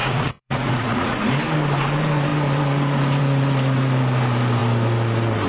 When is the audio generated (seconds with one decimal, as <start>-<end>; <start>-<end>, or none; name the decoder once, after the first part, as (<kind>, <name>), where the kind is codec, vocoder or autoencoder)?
0.0-1.3 (vocoder, Vocos)